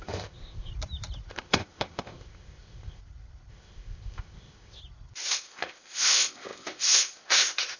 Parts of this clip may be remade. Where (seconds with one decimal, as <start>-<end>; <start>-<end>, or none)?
0.0-0.7; 1.3-3.0; 3.5-4.8; 5.3-7.8